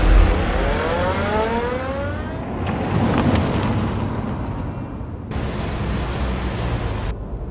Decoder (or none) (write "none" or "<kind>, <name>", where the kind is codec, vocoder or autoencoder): none